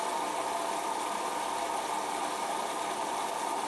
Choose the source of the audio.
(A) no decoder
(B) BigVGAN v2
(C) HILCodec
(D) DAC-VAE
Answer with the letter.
A